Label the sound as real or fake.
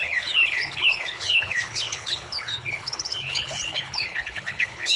fake